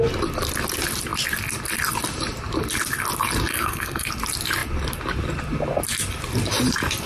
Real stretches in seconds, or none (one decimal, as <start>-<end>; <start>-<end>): 0.0-3.5; 4.1-7.1